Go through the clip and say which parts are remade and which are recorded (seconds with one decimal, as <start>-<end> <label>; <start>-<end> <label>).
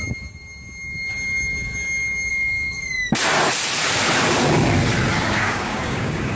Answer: 0.0-2.3 recorded; 2.3-2.8 remade; 2.8-5.3 recorded; 5.3-6.4 remade